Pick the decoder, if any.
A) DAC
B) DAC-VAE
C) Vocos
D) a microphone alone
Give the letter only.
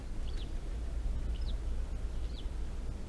D